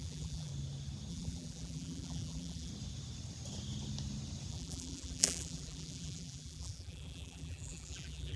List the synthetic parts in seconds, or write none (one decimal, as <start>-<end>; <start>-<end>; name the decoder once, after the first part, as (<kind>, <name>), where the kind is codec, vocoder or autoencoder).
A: 0.0-0.5 (vocoder, BigVGAN v2); 1.1-2.7; 4.5-8.4

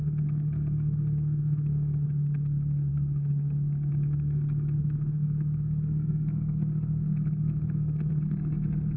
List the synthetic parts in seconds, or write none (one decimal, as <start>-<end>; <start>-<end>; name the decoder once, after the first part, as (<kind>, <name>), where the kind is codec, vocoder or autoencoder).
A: 0.0-9.0 (codec, SNAC)

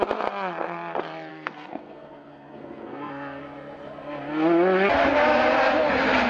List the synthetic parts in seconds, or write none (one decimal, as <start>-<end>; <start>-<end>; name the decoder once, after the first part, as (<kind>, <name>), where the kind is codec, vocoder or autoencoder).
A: 1.3-3.4 (codec, SNAC)

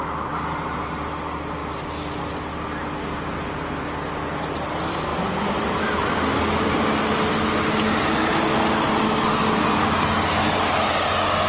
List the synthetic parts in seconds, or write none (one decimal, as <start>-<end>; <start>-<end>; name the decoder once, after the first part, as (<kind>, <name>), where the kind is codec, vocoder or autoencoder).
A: 5.1-6.4 (vocoder, BigVGAN v2)

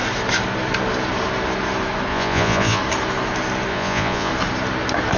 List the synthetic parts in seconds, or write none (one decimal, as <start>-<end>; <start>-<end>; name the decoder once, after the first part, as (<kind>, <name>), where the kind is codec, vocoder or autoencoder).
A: 2.1-2.8 (vocoder, Vocos); 3.7-4.3